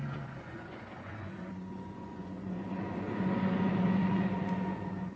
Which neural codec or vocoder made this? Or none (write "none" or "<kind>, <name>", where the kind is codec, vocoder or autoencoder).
vocoder, Vocos